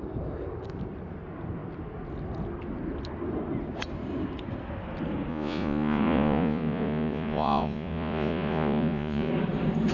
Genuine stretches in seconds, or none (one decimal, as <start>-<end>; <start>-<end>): 0.0-5.3; 9.3-9.9